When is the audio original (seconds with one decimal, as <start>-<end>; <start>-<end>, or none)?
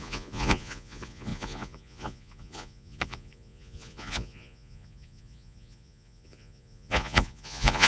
none